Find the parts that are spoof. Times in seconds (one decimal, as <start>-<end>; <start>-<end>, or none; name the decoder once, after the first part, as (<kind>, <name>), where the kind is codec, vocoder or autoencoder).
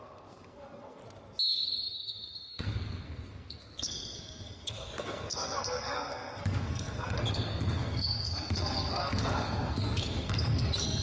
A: 0.0-1.0 (codec, SNAC); 1.5-11.0